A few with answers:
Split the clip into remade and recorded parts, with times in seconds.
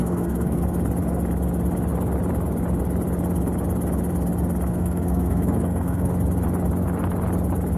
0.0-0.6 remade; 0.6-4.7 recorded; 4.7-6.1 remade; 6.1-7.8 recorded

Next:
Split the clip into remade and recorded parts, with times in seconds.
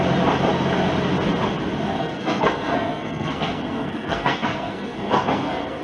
0.0-2.0 recorded; 2.0-5.8 remade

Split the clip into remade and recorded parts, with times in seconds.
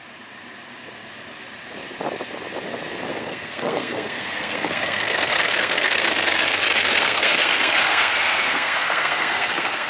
0.0-3.1 recorded; 3.1-6.1 remade; 6.1-6.8 recorded; 6.8-9.9 remade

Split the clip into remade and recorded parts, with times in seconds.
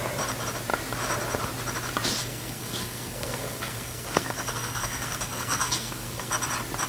0.0-2.2 recorded; 2.2-6.3 remade; 6.3-6.9 recorded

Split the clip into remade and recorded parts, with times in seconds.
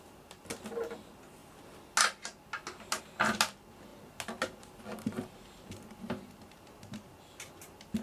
0.0-8.0 recorded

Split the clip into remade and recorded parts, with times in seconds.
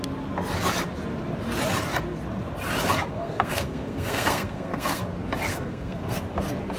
0.0-3.1 recorded; 3.1-5.0 remade; 5.0-5.5 recorded; 5.5-6.2 remade; 6.2-6.8 recorded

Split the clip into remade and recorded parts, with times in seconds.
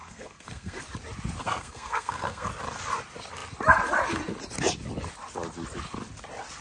0.0-0.8 remade; 0.8-1.4 recorded; 1.4-2.5 remade; 2.5-6.6 recorded